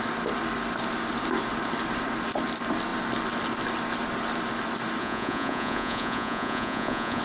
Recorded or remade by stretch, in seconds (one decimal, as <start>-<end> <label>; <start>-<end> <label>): 0.0-5.0 recorded; 5.0-7.2 remade

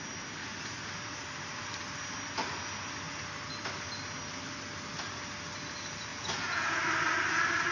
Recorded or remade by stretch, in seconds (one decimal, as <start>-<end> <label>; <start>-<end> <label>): 0.0-6.1 recorded; 6.1-6.8 remade; 6.8-7.7 recorded